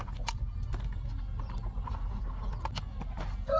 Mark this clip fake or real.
real